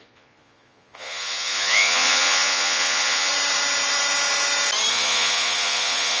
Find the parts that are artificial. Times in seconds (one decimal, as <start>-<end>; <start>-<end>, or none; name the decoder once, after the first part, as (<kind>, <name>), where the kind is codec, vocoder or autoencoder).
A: 0.0-3.3 (vocoder, Vocos); 4.9-6.2